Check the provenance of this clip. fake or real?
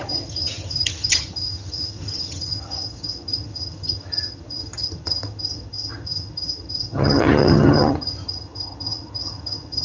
fake